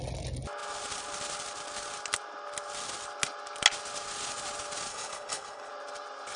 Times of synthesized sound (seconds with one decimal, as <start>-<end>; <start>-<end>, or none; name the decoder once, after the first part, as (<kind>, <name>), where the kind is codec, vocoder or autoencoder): 4.9-5.7 (codec, HILCodec)